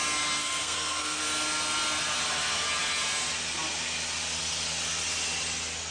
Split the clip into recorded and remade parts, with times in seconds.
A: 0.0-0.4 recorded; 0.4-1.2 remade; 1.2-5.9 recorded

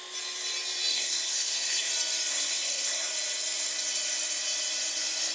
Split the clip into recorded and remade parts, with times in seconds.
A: 0.0-0.9 recorded; 0.9-1.9 remade; 1.9-2.3 recorded; 2.3-3.1 remade; 3.1-5.3 recorded

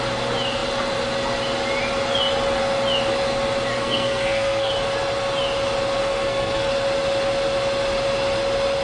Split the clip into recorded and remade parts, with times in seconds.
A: 0.0-3.7 recorded; 3.7-4.7 remade; 4.7-6.0 recorded; 6.0-6.7 remade; 6.7-8.8 recorded

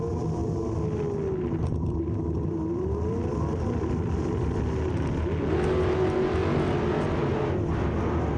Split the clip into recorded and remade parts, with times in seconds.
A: 0.0-8.4 recorded

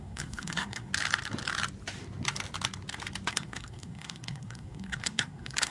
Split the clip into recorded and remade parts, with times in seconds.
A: 0.0-0.9 remade; 0.9-3.3 recorded; 3.3-5.7 remade

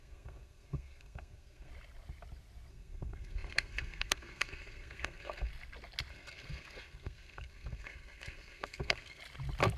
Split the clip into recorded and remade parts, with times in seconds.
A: 0.0-1.7 remade; 1.7-2.7 recorded; 2.7-5.5 remade; 5.5-6.1 recorded; 6.1-9.2 remade; 9.2-9.8 recorded